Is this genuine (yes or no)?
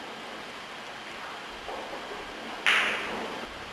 yes